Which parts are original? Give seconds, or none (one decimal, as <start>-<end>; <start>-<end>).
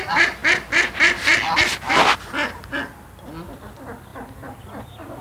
0.0-5.2